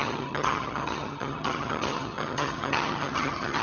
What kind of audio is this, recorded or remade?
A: remade